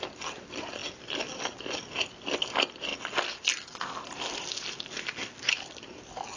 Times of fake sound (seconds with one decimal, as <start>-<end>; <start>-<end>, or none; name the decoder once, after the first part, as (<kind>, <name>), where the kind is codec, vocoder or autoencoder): none